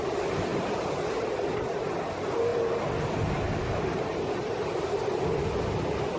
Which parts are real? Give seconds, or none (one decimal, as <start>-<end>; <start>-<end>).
0.0-6.2